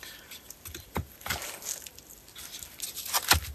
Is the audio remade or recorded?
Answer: recorded